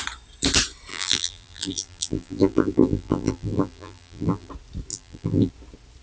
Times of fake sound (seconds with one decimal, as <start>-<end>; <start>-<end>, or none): 0.9-4.5; 4.9-5.5